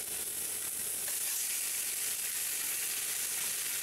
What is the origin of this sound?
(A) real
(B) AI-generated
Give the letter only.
A